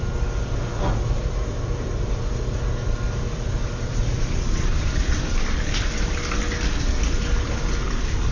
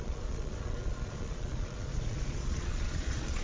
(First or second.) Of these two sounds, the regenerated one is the second